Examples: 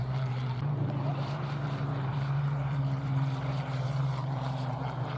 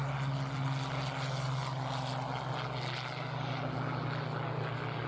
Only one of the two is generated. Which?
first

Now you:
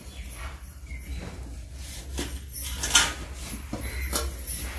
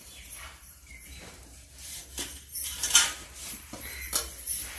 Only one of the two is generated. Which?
second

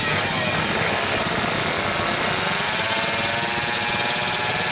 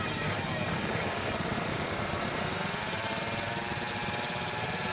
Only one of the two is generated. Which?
second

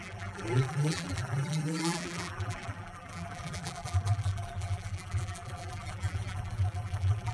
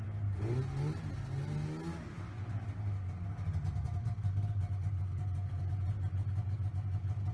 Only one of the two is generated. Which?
first